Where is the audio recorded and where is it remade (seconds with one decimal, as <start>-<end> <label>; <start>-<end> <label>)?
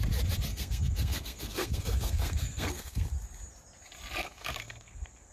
0.0-0.5 recorded; 0.5-3.1 remade; 3.1-4.2 recorded; 4.2-5.3 remade